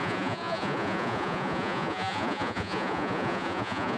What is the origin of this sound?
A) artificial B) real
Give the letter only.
A